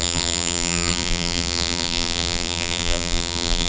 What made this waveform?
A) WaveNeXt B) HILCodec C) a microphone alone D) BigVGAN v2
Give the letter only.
D